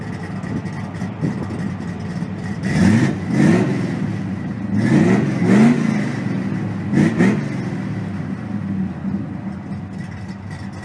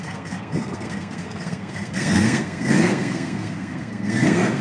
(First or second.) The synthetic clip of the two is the second